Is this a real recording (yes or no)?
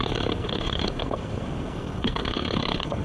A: no